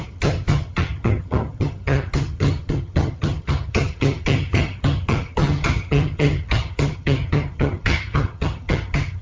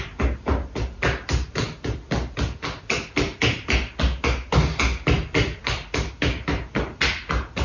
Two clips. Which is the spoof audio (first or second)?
first